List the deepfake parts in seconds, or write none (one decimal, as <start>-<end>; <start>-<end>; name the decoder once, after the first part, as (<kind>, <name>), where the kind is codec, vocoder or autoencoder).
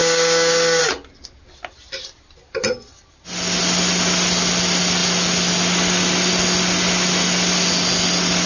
0.0-0.8 (codec, DAC)